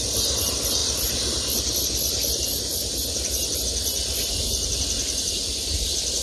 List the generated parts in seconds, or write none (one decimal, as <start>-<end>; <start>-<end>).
0.8-3.6; 4.0-4.5